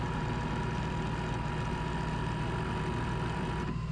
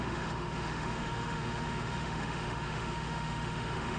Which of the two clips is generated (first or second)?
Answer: second